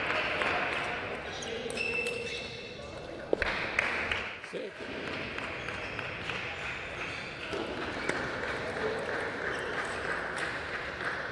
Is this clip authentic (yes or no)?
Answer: yes